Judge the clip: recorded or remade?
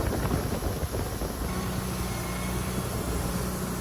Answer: recorded